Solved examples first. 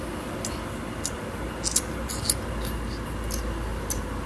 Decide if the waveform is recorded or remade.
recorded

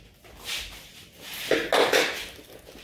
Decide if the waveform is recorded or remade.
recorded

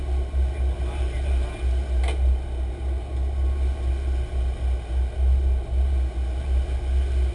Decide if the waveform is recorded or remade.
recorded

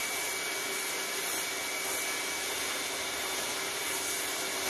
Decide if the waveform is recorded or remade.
recorded